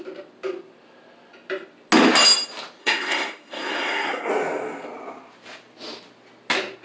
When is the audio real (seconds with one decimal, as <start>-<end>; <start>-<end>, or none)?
0.0-2.8; 4.3-6.8